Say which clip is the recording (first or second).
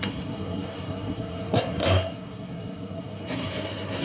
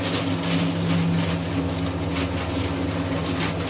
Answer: second